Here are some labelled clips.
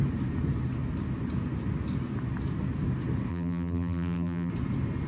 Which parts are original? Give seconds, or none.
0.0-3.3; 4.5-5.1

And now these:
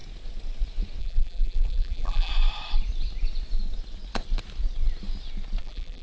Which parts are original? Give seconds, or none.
0.0-1.0; 2.3-5.6

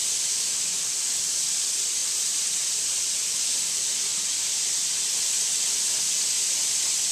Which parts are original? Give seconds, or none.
0.6-2.0; 3.2-4.1; 5.1-7.1